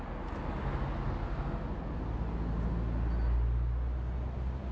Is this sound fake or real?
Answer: real